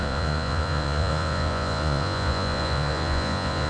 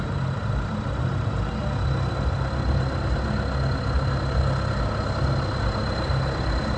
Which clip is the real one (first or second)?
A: second